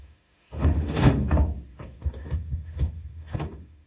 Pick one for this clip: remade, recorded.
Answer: remade